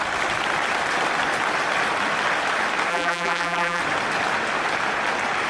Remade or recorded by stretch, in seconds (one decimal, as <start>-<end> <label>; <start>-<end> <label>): 0.0-2.9 recorded; 2.9-3.8 remade; 3.8-5.5 recorded